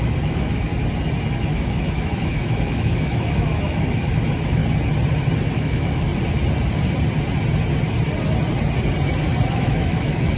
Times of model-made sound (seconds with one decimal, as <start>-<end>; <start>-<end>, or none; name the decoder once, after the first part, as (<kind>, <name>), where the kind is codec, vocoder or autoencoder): 0.0-0.7 (autoencoder, DAC-VAE); 1.4-4.6; 5.5-6.1; 9.5-10.4